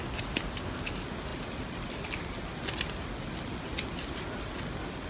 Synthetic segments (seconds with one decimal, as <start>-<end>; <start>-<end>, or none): none